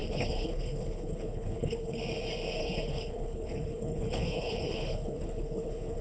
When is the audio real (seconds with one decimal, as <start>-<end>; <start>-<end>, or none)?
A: 2.0-2.6